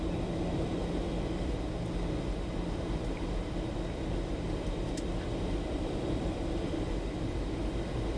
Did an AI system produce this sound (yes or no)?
yes